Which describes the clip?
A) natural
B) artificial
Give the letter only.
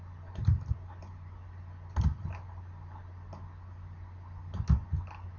A